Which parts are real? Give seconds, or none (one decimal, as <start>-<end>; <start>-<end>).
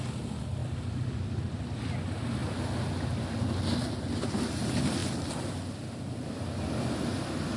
0.0-0.6; 1.9-5.0; 6.3-7.6